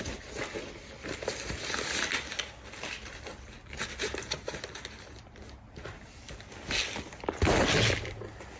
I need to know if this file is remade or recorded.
recorded